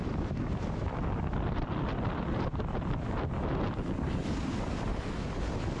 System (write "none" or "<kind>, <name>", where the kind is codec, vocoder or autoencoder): none